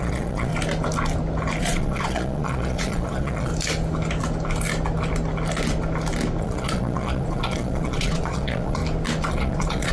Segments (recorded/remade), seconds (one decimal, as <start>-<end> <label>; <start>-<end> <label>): 0.0-0.5 remade; 0.5-1.6 recorded; 1.6-3.5 remade; 3.5-6.4 recorded; 6.4-8.8 remade; 8.8-9.3 recorded; 9.3-9.9 remade

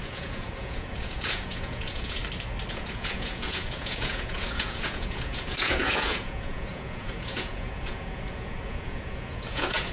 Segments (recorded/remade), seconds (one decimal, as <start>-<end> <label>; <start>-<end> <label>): 0.0-2.2 remade; 2.2-2.7 recorded; 2.7-9.9 remade

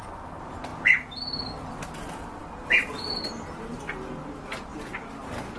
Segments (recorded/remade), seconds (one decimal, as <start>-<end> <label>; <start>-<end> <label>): 0.0-5.6 recorded

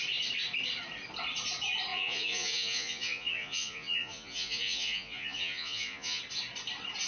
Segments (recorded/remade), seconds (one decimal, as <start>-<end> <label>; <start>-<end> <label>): 0.0-1.9 recorded; 1.9-6.2 remade; 6.2-7.1 recorded

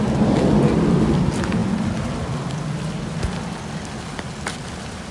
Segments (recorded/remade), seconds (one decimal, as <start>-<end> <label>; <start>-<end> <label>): 0.0-5.1 recorded

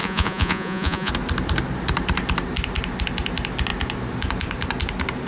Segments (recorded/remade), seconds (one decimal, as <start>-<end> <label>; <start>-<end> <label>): 0.0-1.1 remade; 1.1-5.3 recorded

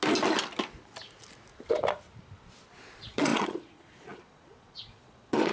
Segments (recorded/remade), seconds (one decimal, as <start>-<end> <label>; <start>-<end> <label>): 0.0-2.8 recorded; 2.8-5.5 remade